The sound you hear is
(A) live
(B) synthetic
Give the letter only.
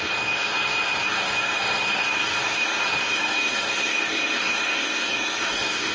B